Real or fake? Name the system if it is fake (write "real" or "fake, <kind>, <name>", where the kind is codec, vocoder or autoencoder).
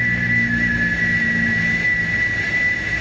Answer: real